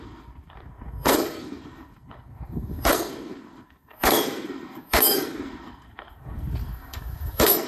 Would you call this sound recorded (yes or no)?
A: no